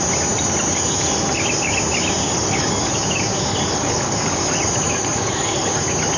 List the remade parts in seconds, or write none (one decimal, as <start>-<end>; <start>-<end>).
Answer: 2.3-2.9; 3.5-5.8